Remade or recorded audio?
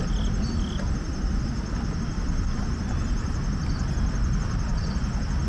recorded